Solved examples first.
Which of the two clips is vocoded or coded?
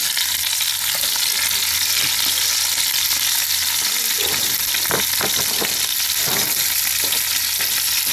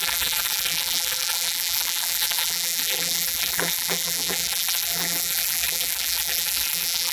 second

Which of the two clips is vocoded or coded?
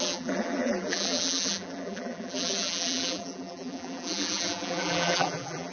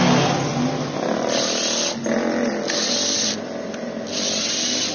first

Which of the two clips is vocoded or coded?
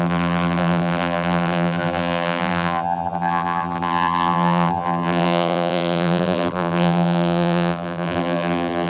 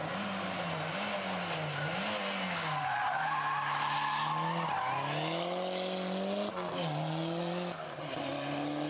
first